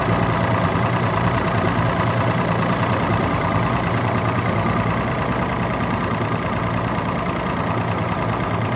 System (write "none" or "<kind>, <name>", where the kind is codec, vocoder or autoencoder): none